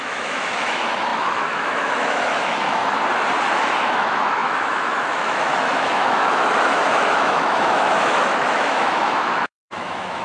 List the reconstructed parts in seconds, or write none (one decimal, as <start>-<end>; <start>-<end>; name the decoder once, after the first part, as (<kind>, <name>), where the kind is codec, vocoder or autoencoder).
0.0-2.8 (autoencoder, DAC-VAE); 3.8-10.2